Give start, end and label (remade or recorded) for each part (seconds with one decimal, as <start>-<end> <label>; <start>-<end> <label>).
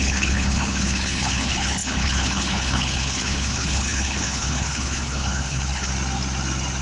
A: 0.0-5.9 remade; 5.9-6.8 recorded